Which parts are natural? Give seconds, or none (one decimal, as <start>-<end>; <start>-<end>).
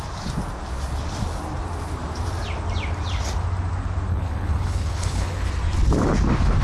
0.0-4.1; 5.5-6.6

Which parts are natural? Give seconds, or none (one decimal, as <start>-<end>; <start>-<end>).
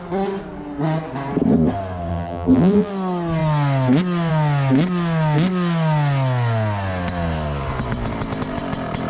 0.0-2.1; 2.9-9.1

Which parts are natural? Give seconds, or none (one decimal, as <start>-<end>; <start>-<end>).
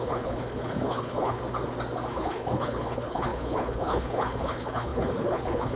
1.4-2.1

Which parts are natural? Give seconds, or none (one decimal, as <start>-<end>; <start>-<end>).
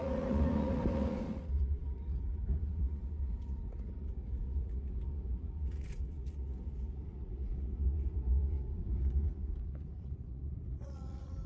none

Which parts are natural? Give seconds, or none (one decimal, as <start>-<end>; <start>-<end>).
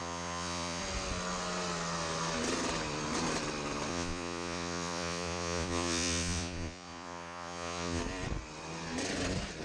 0.8-3.9; 8.0-9.6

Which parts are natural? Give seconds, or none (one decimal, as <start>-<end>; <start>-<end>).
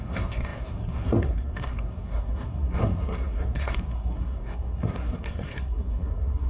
none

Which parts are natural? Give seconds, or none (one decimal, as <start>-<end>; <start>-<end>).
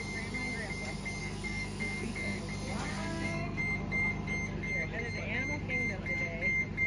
0.0-1.2; 2.4-2.9; 3.6-6.9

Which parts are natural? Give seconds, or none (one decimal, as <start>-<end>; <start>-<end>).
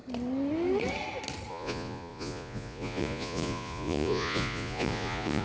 0.0-1.5